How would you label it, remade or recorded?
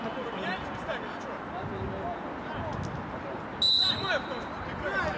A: recorded